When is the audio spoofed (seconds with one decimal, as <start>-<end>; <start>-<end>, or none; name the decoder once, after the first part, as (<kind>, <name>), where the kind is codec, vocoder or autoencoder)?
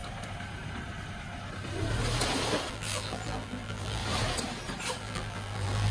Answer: 2.7-4.0 (vocoder, BigVGAN v2); 5.0-5.9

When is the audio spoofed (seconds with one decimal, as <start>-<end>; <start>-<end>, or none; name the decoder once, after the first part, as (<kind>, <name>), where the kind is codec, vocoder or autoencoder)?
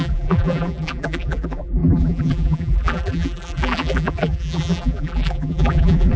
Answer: 0.0-6.2 (vocoder, BigVGAN v2)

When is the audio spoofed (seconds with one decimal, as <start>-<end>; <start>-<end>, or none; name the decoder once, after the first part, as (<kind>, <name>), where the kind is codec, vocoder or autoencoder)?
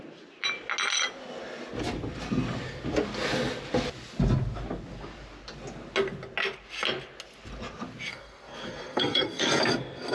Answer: 8.1-9.6 (codec, SNAC)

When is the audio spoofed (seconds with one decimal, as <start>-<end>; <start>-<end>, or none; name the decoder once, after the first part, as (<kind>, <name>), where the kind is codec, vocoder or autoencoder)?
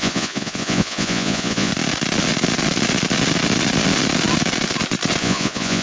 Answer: 0.0-1.7 (vocoder, Vocos); 5.2-5.8